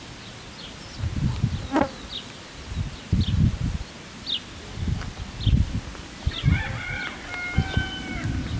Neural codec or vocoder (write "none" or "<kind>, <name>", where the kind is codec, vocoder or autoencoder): none